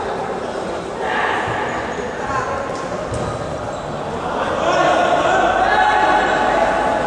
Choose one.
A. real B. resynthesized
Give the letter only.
A